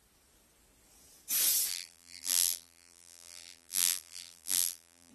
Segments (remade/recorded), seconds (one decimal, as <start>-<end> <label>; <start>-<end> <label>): 0.0-1.7 recorded; 1.7-5.1 remade